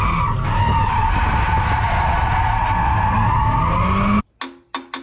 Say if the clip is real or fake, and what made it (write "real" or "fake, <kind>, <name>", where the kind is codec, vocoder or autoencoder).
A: real